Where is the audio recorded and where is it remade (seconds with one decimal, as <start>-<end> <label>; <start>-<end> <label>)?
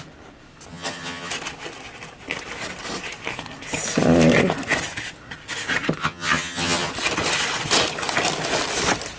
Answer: 0.0-0.7 recorded; 0.7-1.3 remade; 1.3-6.0 recorded; 6.0-6.9 remade; 6.9-9.2 recorded